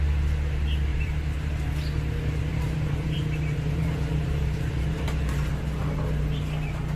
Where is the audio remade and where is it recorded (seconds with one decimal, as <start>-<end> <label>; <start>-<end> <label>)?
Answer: 0.0-0.9 recorded; 0.9-1.5 remade; 1.5-2.5 recorded; 2.5-5.5 remade; 5.5-7.0 recorded